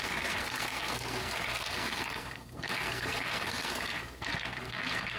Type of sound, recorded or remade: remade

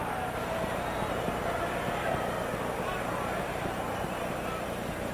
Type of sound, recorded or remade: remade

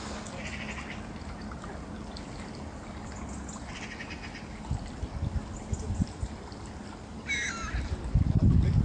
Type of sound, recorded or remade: recorded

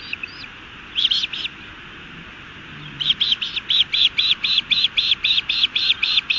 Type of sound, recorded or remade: recorded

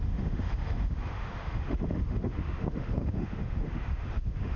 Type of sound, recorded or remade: remade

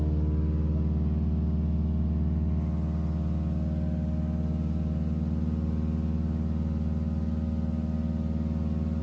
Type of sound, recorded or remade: recorded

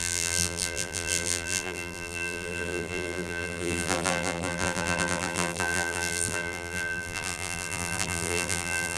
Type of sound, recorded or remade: remade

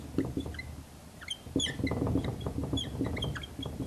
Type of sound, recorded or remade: recorded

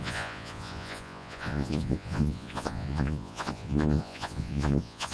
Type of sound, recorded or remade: remade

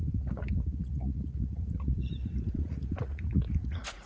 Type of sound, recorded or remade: remade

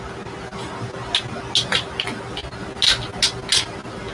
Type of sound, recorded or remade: recorded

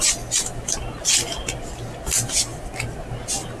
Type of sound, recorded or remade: recorded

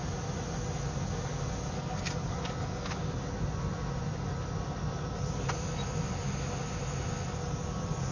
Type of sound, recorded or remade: recorded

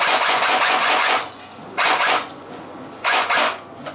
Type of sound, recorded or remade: remade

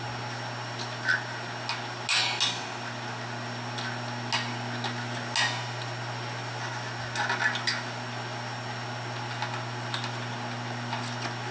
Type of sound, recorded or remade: recorded